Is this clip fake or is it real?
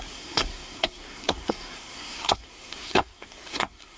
fake